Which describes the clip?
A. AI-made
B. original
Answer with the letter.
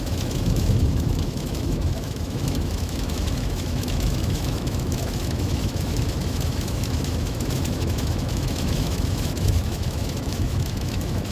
A